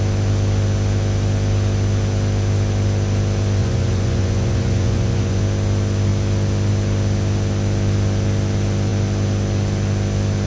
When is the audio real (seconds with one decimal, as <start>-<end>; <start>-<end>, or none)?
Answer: 0.0-3.6; 5.4-10.5

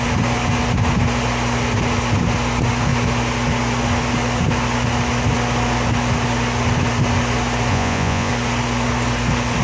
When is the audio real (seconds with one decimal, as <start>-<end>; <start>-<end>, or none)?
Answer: 0.0-7.7; 8.3-9.6

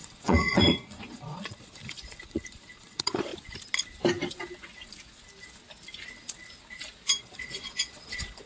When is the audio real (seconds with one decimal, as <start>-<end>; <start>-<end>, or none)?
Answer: 3.3-7.2

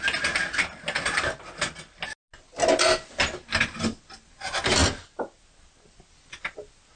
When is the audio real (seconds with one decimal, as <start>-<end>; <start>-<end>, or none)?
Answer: 0.0-7.0

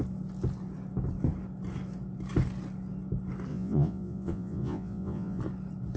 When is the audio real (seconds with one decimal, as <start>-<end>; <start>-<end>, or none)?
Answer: 0.0-3.5; 5.4-6.0

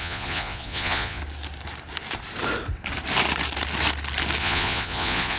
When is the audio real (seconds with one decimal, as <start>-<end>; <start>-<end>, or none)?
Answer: 1.2-4.4

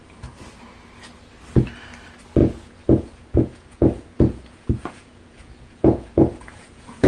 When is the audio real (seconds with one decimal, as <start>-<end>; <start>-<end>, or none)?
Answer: 0.0-2.4

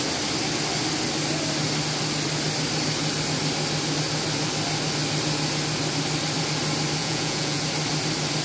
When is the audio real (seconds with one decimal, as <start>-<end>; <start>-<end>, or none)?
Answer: 0.0-7.0; 7.6-8.4